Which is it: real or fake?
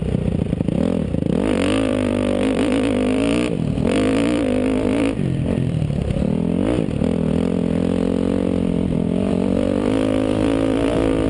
fake